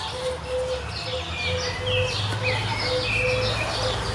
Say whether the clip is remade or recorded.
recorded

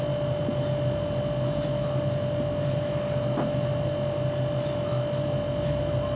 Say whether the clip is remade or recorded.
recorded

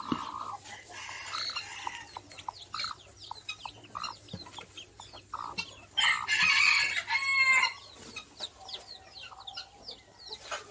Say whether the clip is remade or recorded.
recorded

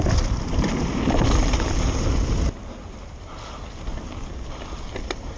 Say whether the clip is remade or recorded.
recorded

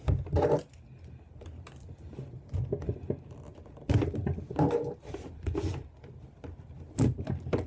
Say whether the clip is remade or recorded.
recorded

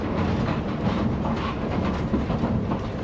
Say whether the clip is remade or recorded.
recorded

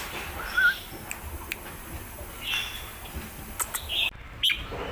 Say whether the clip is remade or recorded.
recorded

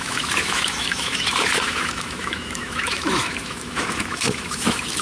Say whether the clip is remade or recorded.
remade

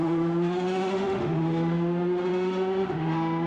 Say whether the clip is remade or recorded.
remade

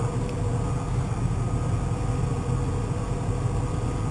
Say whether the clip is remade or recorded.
recorded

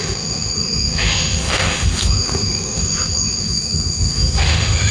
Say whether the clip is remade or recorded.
remade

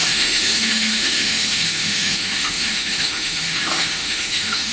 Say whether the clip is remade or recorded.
remade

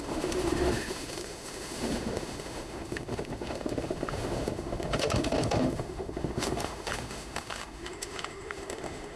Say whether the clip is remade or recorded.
remade